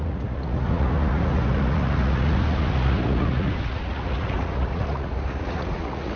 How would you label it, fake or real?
fake